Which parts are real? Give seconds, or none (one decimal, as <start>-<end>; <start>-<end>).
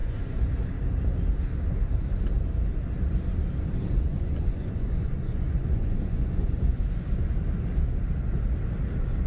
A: 0.5-4.1; 6.8-9.3